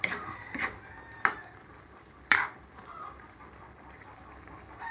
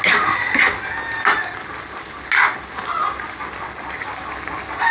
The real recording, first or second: second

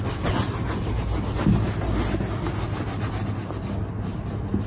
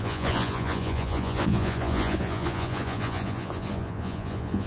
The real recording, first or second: first